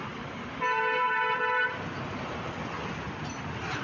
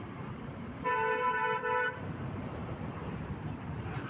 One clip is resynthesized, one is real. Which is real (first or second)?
first